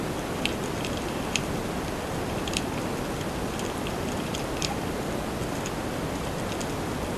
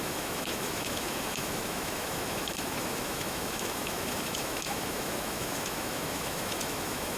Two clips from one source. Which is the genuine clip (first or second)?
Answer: first